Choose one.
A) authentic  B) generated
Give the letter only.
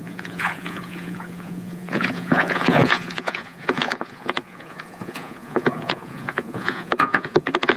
B